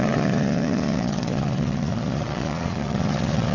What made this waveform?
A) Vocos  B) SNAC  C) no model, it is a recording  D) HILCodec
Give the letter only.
A